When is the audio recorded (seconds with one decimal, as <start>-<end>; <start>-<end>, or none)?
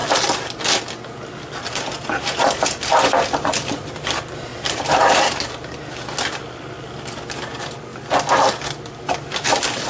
0.8-4.5; 6.6-9.9